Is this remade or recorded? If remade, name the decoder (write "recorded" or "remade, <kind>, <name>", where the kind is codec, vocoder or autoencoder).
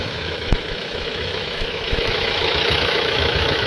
remade, autoencoder, DAC-VAE